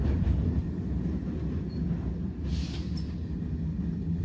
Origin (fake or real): real